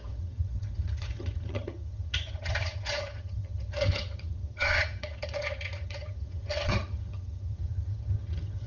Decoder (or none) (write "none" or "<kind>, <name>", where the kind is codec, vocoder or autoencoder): vocoder, HiFi-GAN